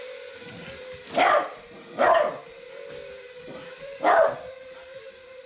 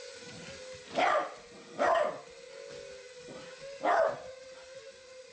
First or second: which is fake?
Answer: first